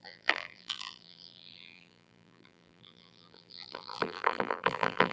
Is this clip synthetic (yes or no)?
yes